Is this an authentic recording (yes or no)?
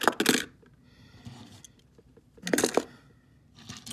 yes